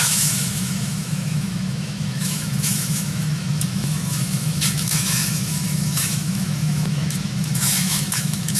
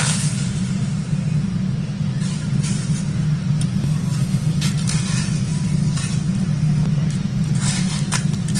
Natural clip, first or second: second